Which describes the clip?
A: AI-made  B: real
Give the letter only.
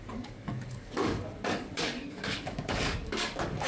A